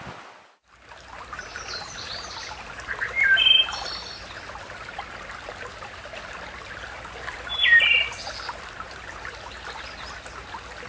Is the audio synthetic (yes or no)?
no